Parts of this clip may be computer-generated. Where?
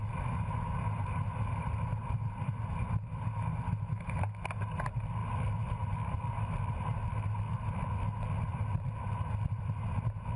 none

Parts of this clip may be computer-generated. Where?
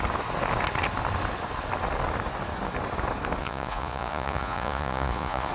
3.4-5.5 (vocoder, Vocos)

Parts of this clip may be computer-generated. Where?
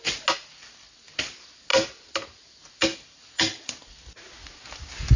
none